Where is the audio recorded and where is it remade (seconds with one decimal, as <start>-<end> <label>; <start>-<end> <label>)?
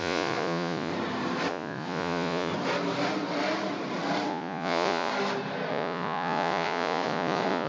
0.0-0.9 remade; 0.9-1.5 recorded; 1.5-2.5 remade; 2.5-4.3 recorded; 4.3-5.1 remade; 5.1-5.7 recorded; 5.7-7.7 remade